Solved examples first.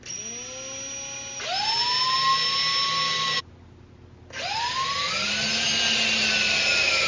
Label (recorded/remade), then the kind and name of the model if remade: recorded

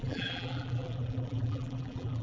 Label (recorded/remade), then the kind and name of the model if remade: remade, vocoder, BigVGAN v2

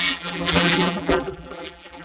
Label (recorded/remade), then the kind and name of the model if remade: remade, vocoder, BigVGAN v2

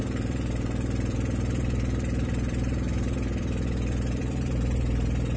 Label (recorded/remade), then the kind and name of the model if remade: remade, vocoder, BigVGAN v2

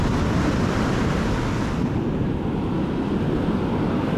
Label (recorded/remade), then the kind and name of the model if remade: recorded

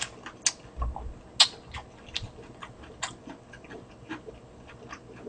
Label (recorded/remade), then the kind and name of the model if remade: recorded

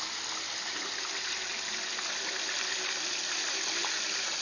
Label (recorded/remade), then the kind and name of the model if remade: recorded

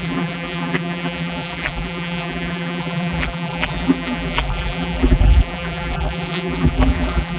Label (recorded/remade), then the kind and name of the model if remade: remade, vocoder, BigVGAN v2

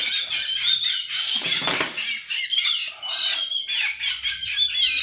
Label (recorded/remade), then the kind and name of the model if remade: recorded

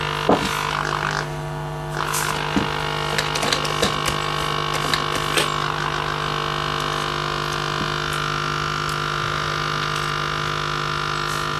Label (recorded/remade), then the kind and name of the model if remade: recorded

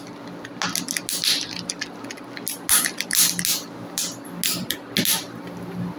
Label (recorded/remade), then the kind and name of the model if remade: recorded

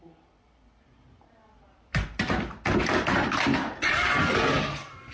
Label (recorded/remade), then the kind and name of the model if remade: recorded